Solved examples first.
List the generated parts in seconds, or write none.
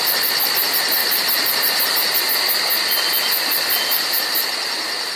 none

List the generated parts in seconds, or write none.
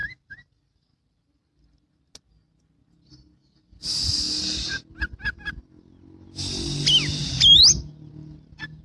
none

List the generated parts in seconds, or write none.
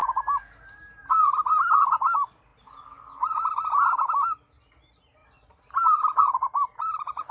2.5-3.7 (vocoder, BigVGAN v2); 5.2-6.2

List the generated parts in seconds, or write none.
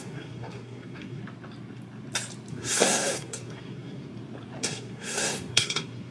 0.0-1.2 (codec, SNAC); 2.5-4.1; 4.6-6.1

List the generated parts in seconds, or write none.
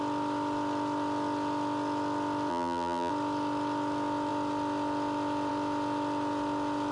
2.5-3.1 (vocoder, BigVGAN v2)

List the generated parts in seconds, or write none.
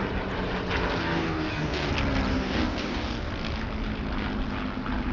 1.0-1.9 (codec, DAC); 2.3-3.3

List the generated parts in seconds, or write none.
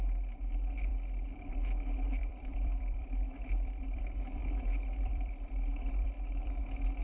2.2-4.0 (vocoder, BigVGAN v2); 4.4-6.6